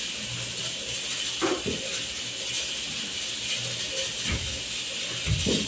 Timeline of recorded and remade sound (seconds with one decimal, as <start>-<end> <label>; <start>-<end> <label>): 0.0-5.7 recorded